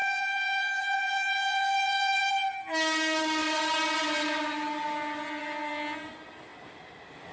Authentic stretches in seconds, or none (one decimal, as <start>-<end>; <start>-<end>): 2.3-7.3